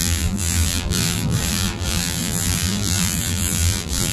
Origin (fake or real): fake